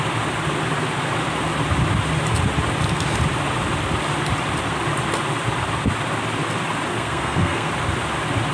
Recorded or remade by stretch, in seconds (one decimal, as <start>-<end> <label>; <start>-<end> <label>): 0.0-6.9 recorded; 6.9-7.7 remade; 7.7-8.5 recorded